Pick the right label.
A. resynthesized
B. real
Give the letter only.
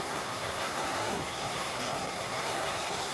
A